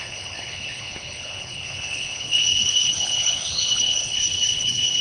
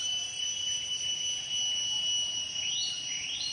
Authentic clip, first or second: second